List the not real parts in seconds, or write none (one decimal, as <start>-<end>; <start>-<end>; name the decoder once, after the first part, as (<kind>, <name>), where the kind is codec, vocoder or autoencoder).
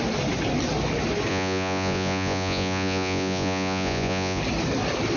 1.3-4.4 (vocoder, Vocos)